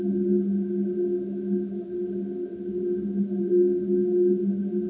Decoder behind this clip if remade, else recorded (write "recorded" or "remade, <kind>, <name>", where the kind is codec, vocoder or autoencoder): recorded